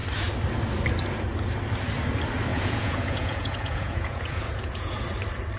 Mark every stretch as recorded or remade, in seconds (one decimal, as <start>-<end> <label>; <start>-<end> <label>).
0.0-2.5 recorded; 2.5-5.0 remade; 5.0-5.6 recorded